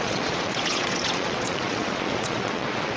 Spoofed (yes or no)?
yes